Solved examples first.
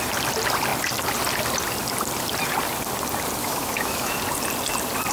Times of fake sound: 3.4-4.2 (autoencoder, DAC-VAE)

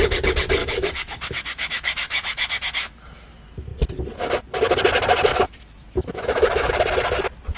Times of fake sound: 0.6-3.0 (autoencoder, DAC-VAE); 5.3-6.7

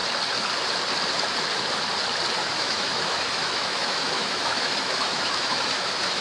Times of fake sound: 2.4-6.2 (autoencoder, DAC-VAE)

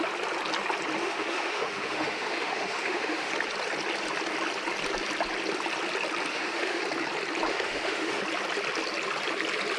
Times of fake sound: 1.0-3.3 (autoencoder, DAC-VAE); 6.3-6.8; 7.5-8.2

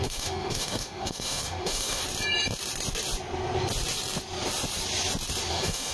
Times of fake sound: 0.0-2.0 (autoencoder, DAC-VAE); 5.5-5.9

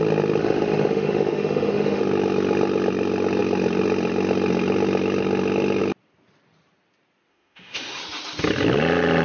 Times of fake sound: 0.4-2.0 (autoencoder, DAC-VAE); 7.3-8.0

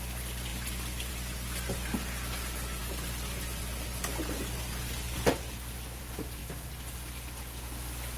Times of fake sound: none

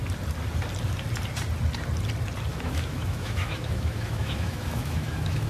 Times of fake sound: 2.5-5.5 (autoencoder, DAC-VAE)